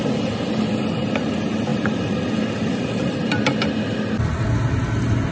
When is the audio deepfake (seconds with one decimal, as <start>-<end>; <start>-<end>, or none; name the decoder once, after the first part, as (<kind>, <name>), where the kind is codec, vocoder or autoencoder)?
none